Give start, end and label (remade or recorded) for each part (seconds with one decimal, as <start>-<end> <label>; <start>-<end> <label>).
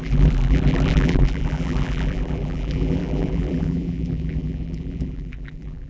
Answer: 0.0-5.9 remade